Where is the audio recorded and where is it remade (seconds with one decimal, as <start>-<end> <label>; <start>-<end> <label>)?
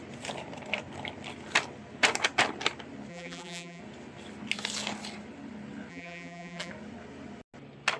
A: 0.0-3.1 recorded; 3.1-3.8 remade; 3.8-5.9 recorded; 5.9-6.7 remade; 6.7-8.0 recorded